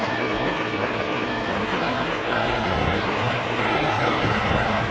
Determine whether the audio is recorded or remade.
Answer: remade